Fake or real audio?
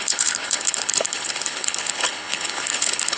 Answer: fake